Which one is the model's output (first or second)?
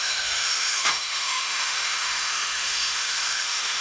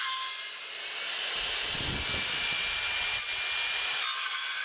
first